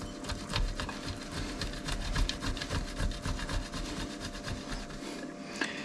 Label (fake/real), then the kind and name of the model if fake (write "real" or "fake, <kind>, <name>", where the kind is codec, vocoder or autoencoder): real